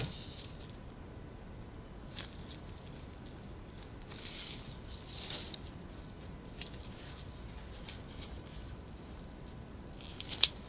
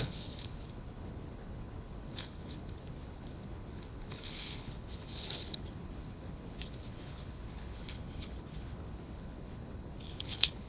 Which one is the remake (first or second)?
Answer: second